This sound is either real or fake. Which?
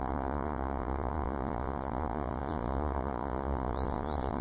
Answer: fake